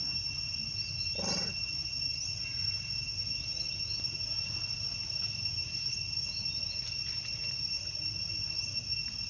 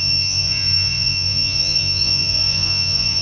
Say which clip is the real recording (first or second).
first